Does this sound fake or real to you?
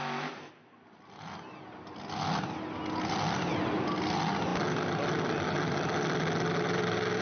real